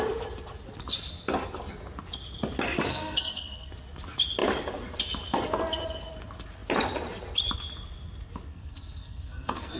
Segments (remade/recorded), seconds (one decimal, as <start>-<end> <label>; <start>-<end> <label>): 0.0-2.9 recorded; 2.9-3.7 remade; 3.7-8.5 recorded; 8.5-9.8 remade